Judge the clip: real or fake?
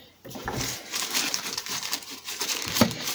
fake